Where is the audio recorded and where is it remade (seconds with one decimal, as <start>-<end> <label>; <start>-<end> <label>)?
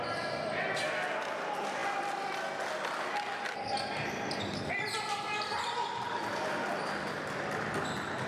0.0-8.3 recorded